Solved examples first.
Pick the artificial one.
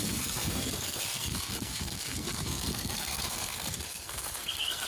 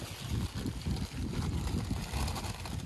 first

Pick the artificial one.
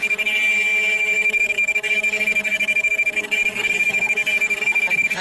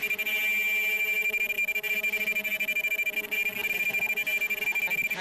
first